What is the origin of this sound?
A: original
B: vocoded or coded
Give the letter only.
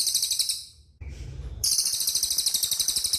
B